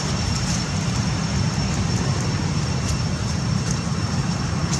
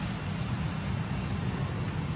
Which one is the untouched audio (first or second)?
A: second